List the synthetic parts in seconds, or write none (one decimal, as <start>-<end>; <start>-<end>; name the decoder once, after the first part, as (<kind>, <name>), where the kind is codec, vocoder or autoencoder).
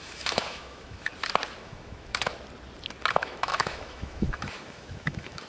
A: 0.0-1.1 (autoencoder, DAC-VAE); 1.6-2.3; 3.1-5.5